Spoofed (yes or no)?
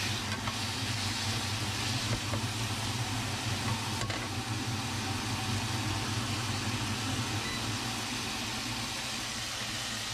no